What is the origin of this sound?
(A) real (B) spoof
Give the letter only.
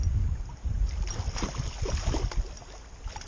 A